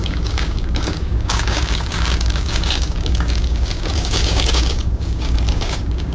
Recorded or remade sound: remade